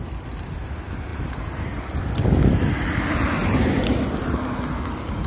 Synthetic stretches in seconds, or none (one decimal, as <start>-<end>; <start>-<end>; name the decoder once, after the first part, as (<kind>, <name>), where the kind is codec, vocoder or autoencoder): none